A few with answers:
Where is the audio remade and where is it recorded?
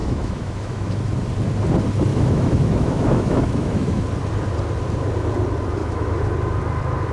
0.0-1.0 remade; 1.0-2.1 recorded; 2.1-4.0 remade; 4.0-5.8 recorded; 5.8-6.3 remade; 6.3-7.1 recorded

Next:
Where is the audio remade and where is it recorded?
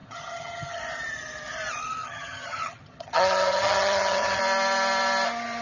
0.0-0.8 remade; 0.8-2.0 recorded; 2.0-4.4 remade; 4.4-5.6 recorded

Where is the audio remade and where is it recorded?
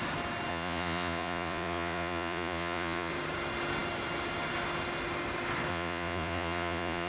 0.0-0.5 recorded; 0.5-3.1 remade; 3.1-5.7 recorded; 5.7-7.1 remade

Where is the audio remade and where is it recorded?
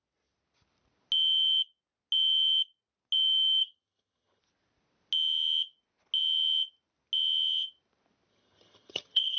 0.0-3.6 recorded; 3.6-4.4 remade; 4.4-8.3 recorded; 8.3-9.4 remade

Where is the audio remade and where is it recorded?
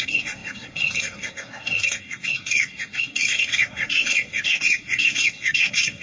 0.0-6.0 remade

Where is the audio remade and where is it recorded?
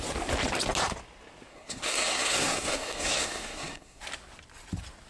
0.0-1.5 recorded; 1.5-4.0 remade; 4.0-5.1 recorded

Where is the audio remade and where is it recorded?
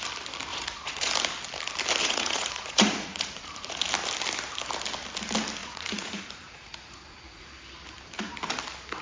0.0-0.5 recorded; 0.5-1.1 remade; 1.1-2.0 recorded; 2.0-3.7 remade; 3.7-5.6 recorded; 5.6-7.5 remade; 7.5-9.0 recorded